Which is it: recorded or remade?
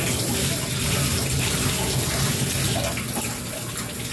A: recorded